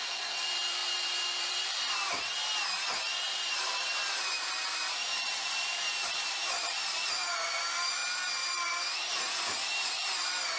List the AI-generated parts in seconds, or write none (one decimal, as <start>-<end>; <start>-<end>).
0.0-8.0; 8.7-10.6